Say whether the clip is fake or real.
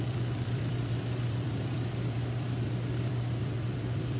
fake